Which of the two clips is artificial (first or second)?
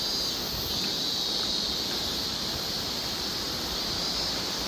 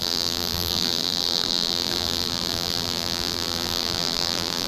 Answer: second